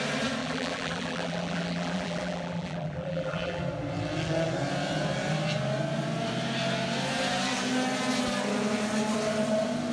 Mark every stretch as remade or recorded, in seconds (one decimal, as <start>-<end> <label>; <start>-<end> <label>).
0.0-0.4 recorded; 0.4-3.6 remade; 3.6-9.9 recorded